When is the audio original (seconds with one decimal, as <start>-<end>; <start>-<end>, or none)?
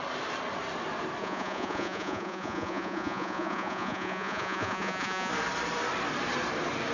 0.0-1.2; 5.3-6.9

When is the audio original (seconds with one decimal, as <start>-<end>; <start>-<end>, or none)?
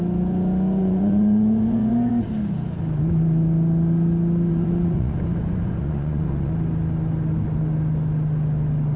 0.0-0.8; 2.1-4.5; 6.5-9.0